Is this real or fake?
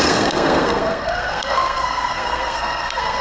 fake